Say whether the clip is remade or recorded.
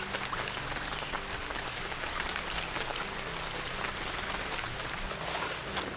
recorded